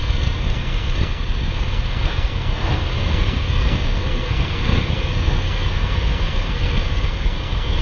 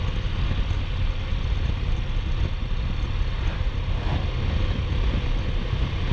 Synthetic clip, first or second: first